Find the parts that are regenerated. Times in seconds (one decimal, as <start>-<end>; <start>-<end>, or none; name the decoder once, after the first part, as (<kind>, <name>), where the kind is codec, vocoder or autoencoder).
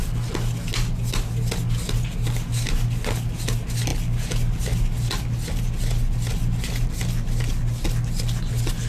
none